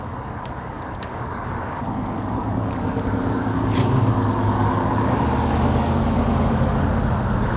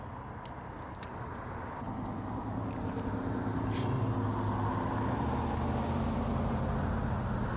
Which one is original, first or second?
second